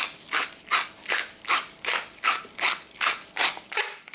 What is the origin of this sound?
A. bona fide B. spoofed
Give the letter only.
A